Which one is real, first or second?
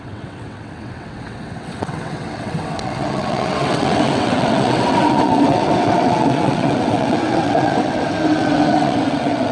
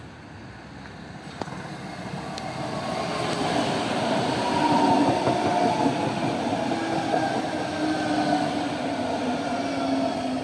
second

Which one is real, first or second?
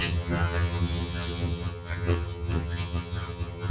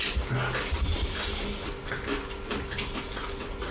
second